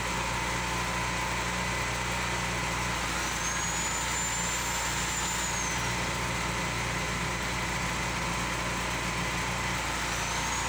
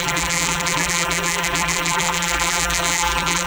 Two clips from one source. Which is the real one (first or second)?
first